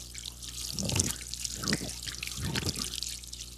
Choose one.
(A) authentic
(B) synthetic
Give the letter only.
A